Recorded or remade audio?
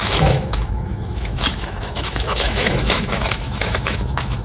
remade